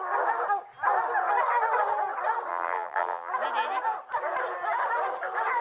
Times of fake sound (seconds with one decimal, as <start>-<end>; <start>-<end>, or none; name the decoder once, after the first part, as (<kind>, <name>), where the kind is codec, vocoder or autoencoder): 2.5-3.3 (vocoder, BigVGAN v2)